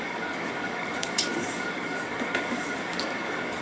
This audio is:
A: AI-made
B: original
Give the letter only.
A